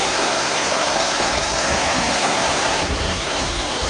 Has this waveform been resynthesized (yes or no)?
yes